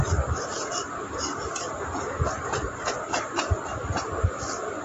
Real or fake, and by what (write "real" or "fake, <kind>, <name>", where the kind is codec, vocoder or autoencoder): fake, vocoder, BigVGAN v2